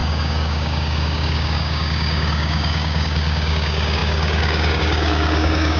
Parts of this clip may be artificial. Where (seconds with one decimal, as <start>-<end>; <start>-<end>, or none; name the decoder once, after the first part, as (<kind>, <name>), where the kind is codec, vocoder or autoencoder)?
0.0-5.8 (codec, DAC)